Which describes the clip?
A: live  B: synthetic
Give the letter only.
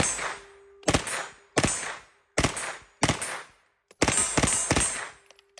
A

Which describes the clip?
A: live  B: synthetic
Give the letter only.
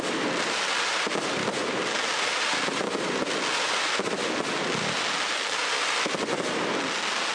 A